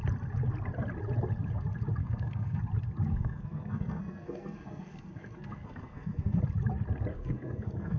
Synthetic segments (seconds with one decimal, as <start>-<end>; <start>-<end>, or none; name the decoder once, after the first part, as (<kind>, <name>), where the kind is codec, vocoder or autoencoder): 2.0-2.6 (codec, SNAC); 3.1-6.4; 7.1-8.0